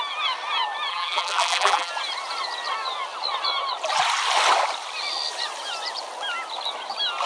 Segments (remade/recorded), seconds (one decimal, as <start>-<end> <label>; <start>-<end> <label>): 0.0-0.9 recorded; 0.9-1.9 remade; 1.9-7.3 recorded